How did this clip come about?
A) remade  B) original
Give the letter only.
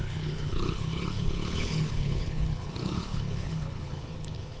A